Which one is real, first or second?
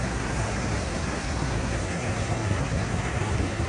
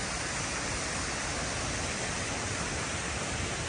second